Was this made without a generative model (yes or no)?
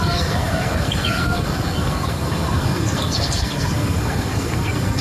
no